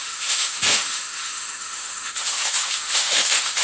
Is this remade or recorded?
remade